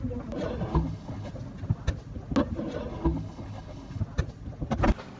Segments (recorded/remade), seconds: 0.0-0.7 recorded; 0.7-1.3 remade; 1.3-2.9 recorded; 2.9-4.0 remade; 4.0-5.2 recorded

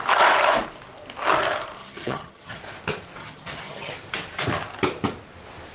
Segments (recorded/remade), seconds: 0.0-1.8 recorded; 1.8-2.6 remade; 2.6-3.2 recorded; 3.2-3.9 remade; 3.9-5.7 recorded